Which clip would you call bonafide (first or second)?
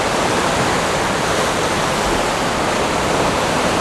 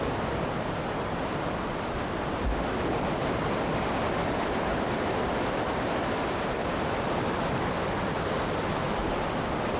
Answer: first